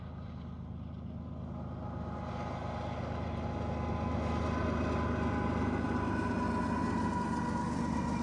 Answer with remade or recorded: recorded